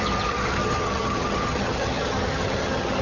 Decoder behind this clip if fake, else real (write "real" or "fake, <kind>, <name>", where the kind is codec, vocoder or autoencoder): fake, vocoder, HiFi-GAN